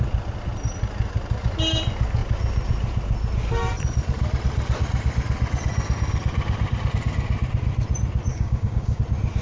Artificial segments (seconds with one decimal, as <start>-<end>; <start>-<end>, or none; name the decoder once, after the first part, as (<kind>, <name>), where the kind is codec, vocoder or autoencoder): 8.3-9.0 (codec, DAC)

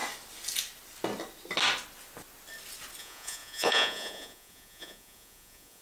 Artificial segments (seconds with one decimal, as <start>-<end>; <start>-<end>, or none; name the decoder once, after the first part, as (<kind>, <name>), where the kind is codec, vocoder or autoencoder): 3.0-5.8 (vocoder, Vocos)

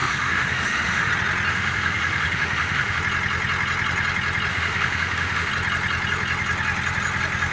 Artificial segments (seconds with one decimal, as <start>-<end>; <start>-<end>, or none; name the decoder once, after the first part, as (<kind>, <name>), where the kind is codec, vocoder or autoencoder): 0.0-1.1 (autoencoder, DAC-VAE); 1.5-3.0; 4.5-5.5

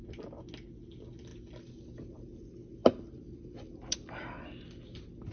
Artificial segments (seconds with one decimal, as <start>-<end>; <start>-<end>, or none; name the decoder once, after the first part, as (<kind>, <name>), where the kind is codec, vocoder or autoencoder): none

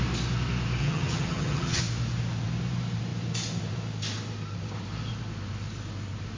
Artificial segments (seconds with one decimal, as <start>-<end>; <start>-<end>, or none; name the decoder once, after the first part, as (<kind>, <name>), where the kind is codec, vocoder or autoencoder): 0.8-1.8 (vocoder, HiFi-GAN)

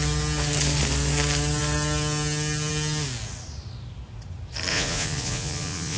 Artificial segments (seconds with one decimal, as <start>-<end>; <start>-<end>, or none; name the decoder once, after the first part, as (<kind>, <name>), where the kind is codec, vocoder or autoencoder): 4.7-6.0 (vocoder, Vocos)

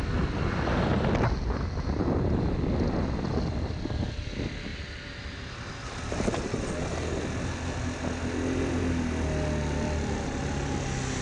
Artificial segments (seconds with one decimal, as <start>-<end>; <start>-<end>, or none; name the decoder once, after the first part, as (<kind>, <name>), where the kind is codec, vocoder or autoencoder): none

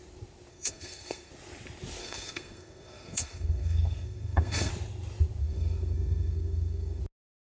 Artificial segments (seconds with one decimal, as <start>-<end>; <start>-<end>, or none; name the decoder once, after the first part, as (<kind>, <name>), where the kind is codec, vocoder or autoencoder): 0.5-1.3 (codec, SNAC); 2.0-4.7; 5.4-7.0